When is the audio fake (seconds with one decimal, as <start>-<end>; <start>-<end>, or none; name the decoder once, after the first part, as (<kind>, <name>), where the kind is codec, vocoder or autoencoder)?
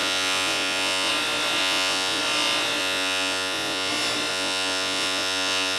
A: 0.0-1.1 (vocoder, Vocos); 1.6-2.2; 2.8-3.9; 4.3-5.8